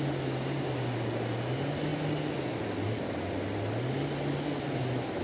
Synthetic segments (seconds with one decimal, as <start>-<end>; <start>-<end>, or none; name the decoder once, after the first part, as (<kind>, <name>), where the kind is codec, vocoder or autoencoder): none